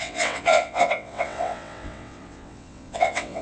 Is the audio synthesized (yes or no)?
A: yes